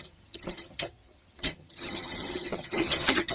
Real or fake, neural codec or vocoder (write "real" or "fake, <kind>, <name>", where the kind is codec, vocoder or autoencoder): fake, vocoder, HiFi-GAN